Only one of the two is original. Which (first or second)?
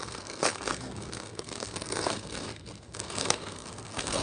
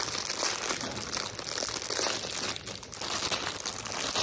second